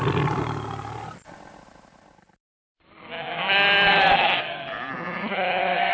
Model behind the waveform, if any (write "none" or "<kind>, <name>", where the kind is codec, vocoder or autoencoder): none